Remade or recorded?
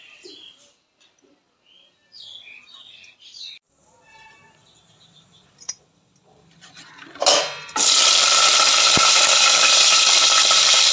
recorded